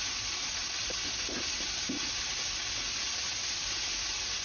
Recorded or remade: recorded